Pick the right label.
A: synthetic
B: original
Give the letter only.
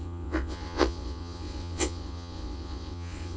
A